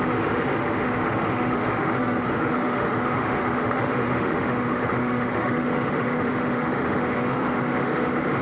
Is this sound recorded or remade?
remade